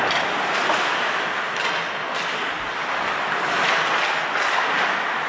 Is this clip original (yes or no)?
yes